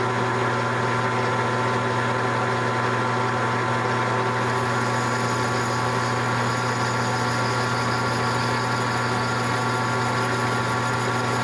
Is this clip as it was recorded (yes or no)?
yes